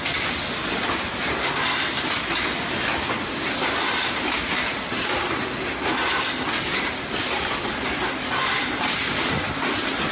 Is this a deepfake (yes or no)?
no